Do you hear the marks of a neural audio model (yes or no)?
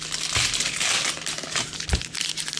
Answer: no